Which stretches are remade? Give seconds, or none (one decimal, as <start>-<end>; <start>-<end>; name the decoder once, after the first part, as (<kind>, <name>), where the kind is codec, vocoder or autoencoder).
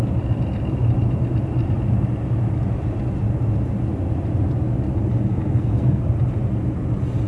5.3-6.0 (codec, SNAC)